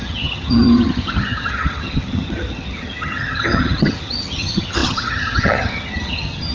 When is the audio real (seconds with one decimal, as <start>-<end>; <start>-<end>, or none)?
none